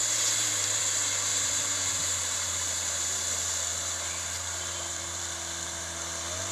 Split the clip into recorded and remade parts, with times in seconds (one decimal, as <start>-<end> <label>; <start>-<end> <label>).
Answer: 0.0-0.8 remade; 0.8-1.3 recorded; 1.3-5.2 remade; 5.2-6.5 recorded